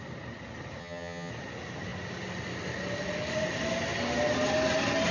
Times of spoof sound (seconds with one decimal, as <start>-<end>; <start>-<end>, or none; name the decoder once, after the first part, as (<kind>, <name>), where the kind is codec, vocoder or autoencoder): 0.8-1.3 (vocoder, HiFi-GAN)